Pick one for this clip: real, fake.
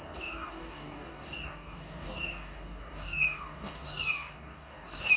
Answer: fake